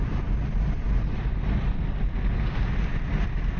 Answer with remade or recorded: recorded